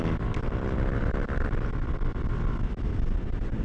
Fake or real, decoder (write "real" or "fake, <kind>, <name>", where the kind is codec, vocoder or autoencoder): real